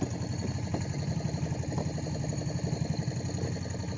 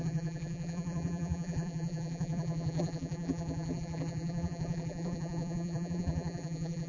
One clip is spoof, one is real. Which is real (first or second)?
first